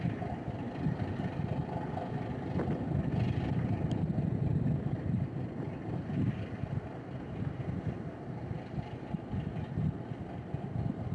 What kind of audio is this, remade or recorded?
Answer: recorded